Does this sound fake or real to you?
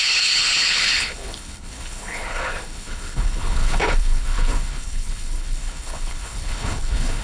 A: fake